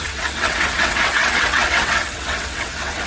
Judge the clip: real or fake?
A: fake